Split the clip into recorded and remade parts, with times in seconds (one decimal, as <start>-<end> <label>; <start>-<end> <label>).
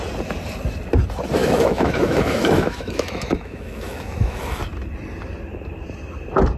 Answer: 0.0-1.4 recorded; 1.4-4.6 remade; 4.6-6.6 recorded